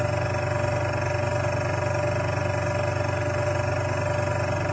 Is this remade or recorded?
recorded